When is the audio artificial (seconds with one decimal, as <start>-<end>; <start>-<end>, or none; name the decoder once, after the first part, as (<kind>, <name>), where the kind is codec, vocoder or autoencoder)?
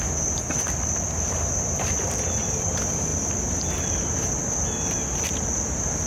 none